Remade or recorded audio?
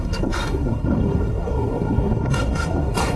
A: remade